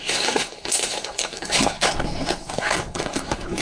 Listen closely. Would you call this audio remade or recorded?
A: remade